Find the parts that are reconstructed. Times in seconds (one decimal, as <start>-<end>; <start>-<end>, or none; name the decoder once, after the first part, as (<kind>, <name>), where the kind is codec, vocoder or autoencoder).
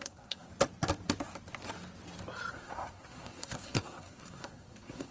0.0-0.5 (codec, SNAC); 2.5-5.1